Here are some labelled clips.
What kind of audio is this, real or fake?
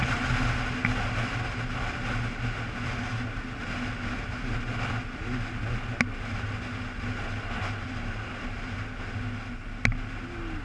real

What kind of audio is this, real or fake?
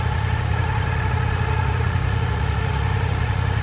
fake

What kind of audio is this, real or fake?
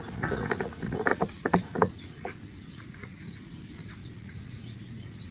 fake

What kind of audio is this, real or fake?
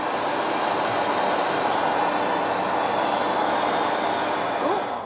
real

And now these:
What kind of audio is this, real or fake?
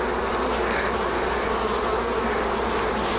real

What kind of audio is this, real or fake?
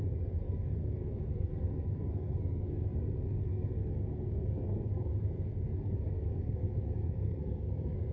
fake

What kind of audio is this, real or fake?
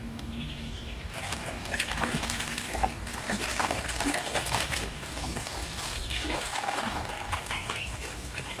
fake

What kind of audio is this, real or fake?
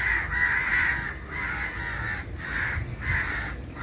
real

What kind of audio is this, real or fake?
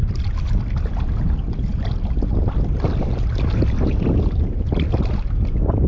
real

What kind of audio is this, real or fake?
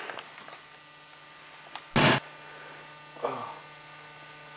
real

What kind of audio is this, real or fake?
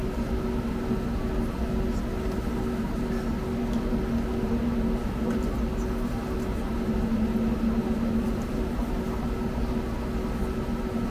real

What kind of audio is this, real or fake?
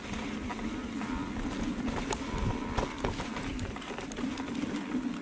real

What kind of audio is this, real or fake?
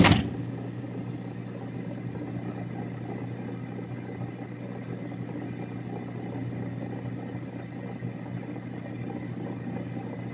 real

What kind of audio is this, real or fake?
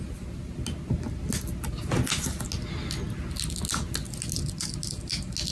real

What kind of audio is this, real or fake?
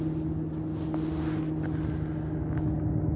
real